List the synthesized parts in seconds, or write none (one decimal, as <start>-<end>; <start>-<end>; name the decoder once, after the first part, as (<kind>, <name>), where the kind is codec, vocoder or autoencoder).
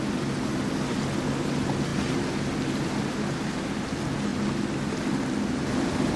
none